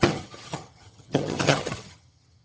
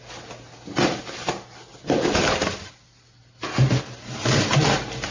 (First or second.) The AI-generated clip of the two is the first